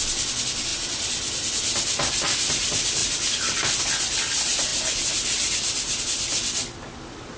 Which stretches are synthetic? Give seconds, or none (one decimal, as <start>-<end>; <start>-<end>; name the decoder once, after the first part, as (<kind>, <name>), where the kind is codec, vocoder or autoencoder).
none

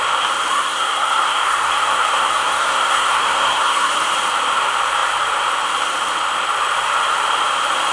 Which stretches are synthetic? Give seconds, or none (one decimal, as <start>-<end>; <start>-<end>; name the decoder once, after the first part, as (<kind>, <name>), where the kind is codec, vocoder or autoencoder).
0.5-3.9 (codec, SNAC)